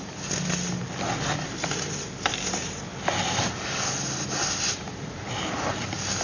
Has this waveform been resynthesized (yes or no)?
no